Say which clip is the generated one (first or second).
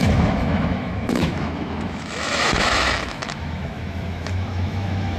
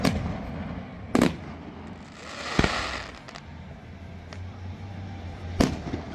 first